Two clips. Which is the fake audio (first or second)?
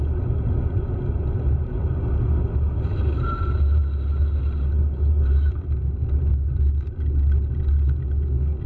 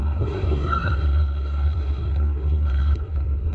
second